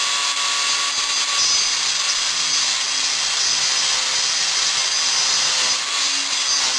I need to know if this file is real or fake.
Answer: real